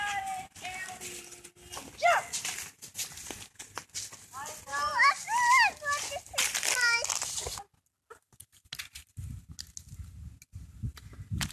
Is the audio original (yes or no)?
yes